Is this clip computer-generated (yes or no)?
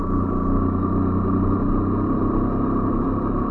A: no